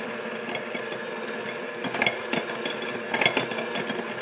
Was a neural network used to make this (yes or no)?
no